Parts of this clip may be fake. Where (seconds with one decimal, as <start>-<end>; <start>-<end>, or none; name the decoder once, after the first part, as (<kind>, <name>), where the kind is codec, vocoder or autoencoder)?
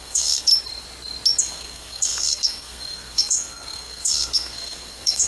0.0-0.5 (codec, SNAC); 1.4-5.3